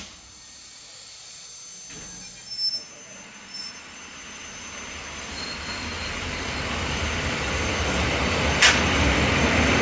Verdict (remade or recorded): recorded